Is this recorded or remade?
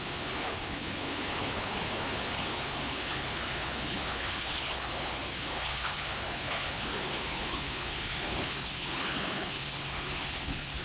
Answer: remade